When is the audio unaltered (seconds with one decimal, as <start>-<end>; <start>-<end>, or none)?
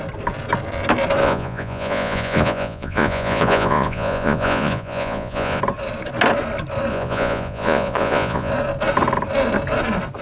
0.0-1.2; 5.6-6.9; 8.5-10.2